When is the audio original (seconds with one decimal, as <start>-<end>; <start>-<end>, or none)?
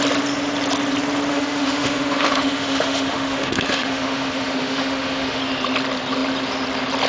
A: 0.0-1.3; 5.4-7.1